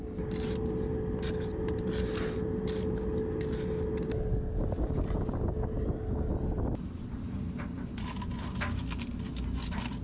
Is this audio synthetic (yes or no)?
no